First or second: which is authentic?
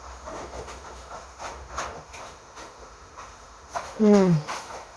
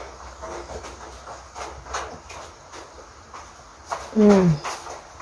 second